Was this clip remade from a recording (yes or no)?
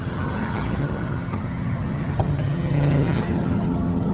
yes